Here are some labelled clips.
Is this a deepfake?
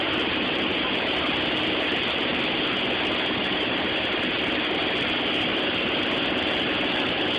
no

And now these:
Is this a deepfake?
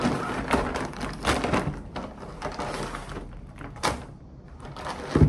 no